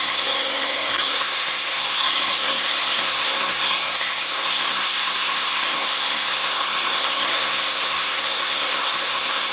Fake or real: fake